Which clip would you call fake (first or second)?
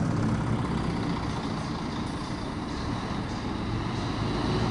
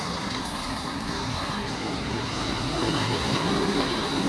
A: second